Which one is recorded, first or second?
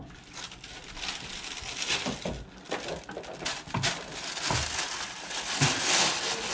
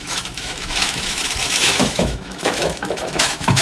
first